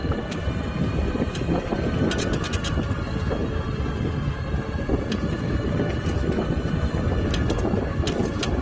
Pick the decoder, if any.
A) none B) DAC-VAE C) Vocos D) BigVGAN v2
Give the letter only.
A